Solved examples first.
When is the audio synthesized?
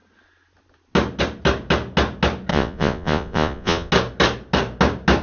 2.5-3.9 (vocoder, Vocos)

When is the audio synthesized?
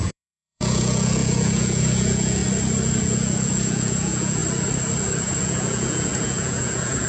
0.0-2.4 (vocoder, Vocos); 3.0-4.4; 5.4-7.1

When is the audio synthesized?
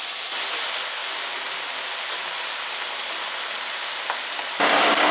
none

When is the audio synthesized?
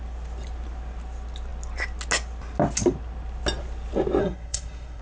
4.2-5.0 (codec, SNAC)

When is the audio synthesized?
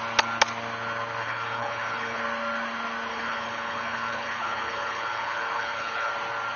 1.2-2.2 (codec, HILCodec); 3.1-6.1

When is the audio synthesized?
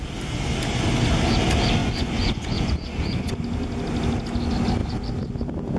1.8-3.3 (vocoder, Vocos)